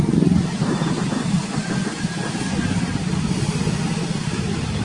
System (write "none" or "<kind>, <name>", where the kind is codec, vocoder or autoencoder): none